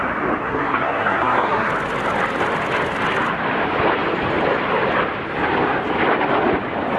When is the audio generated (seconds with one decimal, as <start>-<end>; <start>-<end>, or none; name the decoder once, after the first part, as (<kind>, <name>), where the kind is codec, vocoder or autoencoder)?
0.4-1.7 (codec, SNAC)